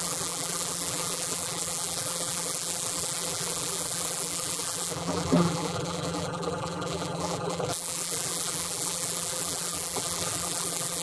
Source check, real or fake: fake